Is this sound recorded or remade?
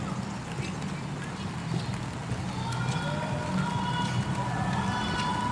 recorded